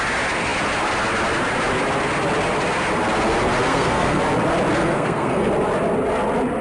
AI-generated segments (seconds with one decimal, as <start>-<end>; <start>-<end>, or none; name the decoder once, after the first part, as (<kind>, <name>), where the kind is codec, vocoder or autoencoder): 3.7-4.2 (codec, SNAC); 4.8-5.5